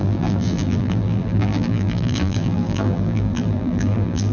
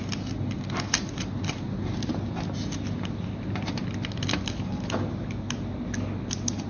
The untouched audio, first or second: second